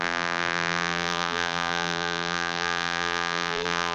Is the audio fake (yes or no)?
yes